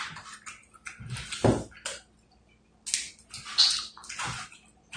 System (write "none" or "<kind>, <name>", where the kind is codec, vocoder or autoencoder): none